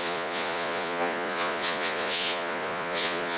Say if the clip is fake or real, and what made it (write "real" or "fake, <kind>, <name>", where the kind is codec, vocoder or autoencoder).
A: fake, vocoder, Vocos